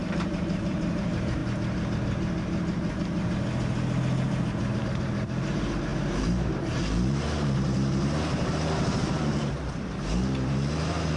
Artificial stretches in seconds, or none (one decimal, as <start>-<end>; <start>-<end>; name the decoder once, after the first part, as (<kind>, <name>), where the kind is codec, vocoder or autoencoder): 0.0-1.4 (vocoder, BigVGAN v2); 4.8-11.2